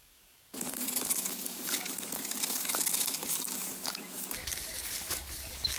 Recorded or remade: remade